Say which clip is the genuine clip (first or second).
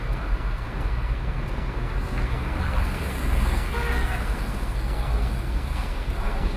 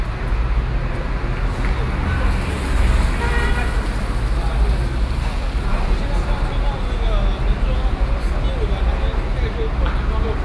second